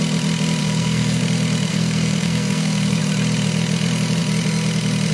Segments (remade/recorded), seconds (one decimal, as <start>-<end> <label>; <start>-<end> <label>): 0.0-0.6 recorded; 0.6-1.2 remade; 1.2-1.7 recorded; 1.7-3.0 remade; 3.0-5.1 recorded